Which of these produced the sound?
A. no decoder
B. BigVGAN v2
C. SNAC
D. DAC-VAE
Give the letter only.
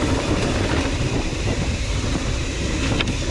B